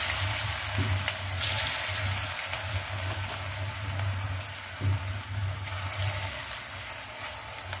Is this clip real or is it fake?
real